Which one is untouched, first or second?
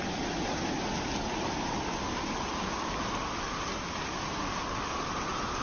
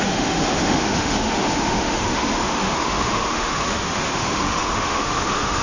first